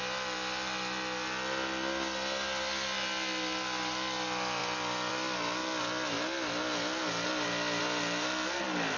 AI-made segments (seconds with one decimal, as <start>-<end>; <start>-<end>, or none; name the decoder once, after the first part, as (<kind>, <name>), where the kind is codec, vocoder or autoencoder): none